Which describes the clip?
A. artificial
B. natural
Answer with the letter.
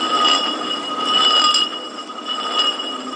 B